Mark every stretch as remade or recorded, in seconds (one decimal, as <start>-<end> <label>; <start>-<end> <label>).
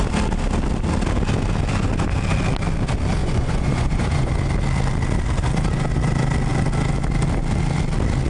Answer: 0.0-3.2 recorded; 3.2-4.3 remade; 4.3-8.3 recorded